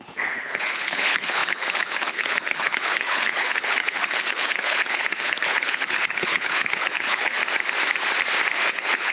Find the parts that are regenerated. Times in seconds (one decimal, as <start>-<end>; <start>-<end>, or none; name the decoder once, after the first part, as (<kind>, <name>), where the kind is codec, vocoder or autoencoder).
0.0-7.4 (codec, HILCodec); 8.7-9.1